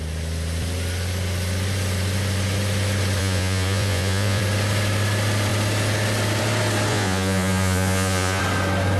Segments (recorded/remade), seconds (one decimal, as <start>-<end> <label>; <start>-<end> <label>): 0.0-3.2 recorded; 3.2-4.4 remade; 4.4-6.9 recorded; 6.9-8.4 remade; 8.4-9.0 recorded